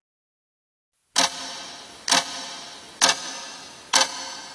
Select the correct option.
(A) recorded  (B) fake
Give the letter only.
A